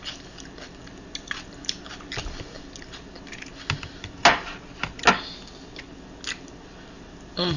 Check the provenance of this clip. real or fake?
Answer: real